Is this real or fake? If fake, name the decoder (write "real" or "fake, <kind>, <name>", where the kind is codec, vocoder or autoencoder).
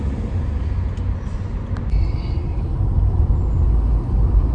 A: real